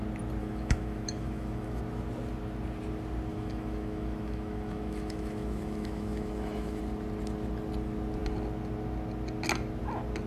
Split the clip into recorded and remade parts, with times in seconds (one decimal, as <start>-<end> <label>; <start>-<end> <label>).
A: 0.0-0.4 recorded; 0.4-1.8 remade; 1.8-3.3 recorded; 3.3-6.8 remade; 6.8-10.3 recorded